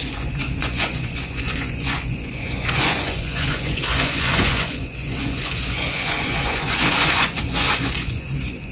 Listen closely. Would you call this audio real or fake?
fake